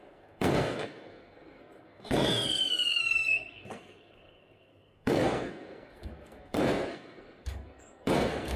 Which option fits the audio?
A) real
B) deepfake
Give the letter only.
B